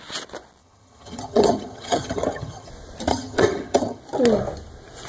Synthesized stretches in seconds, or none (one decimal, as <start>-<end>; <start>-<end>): 0.6-2.7; 3.1-4.0